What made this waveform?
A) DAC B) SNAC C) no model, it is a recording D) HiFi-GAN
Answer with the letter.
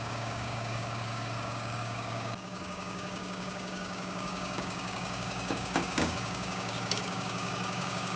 A